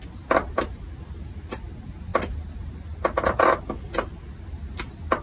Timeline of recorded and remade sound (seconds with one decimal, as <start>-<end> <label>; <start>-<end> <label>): 0.0-5.2 recorded